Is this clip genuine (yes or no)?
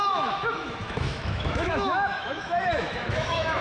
no